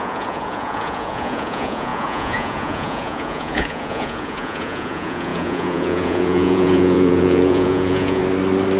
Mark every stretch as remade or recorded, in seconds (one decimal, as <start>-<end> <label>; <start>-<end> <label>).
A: 0.0-8.2 remade; 8.2-8.8 recorded